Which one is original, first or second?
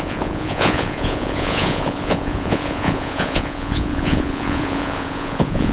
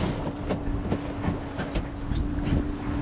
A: second